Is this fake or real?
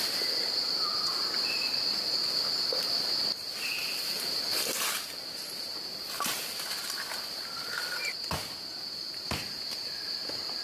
real